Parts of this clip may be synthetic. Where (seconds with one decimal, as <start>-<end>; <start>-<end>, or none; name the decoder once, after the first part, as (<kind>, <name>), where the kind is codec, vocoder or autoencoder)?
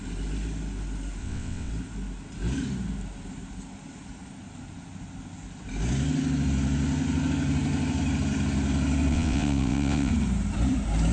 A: 1.2-1.7 (vocoder, WaveNeXt); 9.1-10.1